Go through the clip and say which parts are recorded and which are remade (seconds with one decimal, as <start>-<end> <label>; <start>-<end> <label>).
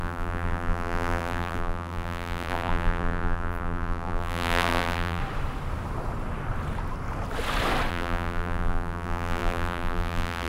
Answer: 0.0-5.2 remade; 5.2-7.9 recorded; 7.9-10.5 remade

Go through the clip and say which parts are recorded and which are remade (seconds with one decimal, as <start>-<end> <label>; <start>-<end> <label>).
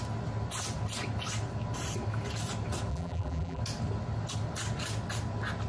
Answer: 0.0-2.9 recorded; 2.9-3.6 remade; 3.6-5.7 recorded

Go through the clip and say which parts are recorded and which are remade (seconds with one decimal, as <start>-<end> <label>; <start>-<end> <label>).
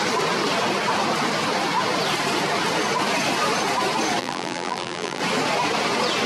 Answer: 0.0-4.2 recorded; 4.2-5.2 remade; 5.2-6.3 recorded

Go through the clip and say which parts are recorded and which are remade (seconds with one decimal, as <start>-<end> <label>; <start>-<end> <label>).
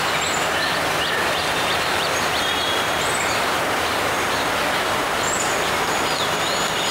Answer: 0.0-1.4 recorded; 1.4-2.4 remade; 2.4-6.9 recorded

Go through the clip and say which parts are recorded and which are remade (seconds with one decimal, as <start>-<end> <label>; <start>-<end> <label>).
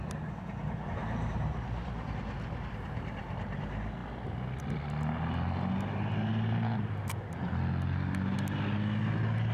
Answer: 0.0-1.0 recorded; 1.0-2.1 remade; 2.1-6.3 recorded; 6.3-7.2 remade; 7.2-9.5 recorded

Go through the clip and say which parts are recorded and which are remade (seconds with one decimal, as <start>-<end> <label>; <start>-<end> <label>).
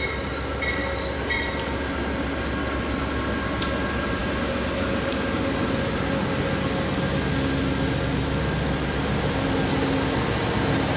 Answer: 0.0-11.0 recorded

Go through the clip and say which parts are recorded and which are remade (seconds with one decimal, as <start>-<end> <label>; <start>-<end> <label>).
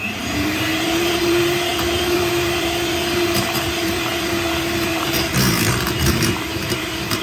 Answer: 0.0-7.2 remade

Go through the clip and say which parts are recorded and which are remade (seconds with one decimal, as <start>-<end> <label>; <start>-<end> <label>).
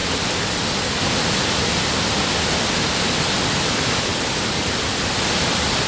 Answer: 0.0-1.9 remade; 1.9-4.1 recorded; 4.1-4.8 remade; 4.8-5.9 recorded